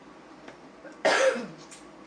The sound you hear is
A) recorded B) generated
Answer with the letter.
A